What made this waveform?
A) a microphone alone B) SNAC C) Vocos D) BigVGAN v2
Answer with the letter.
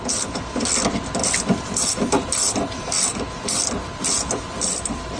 D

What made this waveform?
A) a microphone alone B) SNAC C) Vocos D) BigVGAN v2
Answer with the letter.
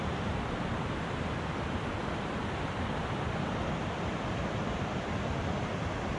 D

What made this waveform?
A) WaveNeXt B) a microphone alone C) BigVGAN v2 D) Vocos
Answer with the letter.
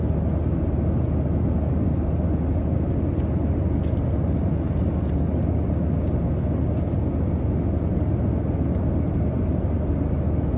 B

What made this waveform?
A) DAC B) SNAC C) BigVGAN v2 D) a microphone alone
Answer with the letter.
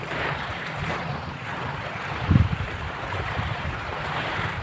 C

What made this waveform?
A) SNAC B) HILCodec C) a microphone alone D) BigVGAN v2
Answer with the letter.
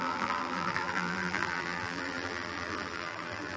D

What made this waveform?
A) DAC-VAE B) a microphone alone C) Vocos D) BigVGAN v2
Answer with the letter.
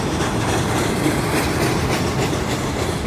D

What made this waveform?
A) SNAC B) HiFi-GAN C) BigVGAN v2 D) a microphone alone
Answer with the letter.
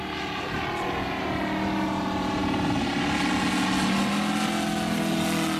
D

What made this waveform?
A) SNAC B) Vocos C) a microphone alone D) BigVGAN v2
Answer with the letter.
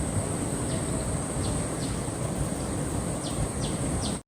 C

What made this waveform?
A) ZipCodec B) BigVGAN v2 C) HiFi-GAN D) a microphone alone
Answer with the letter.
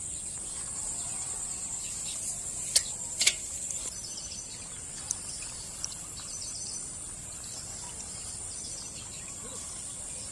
B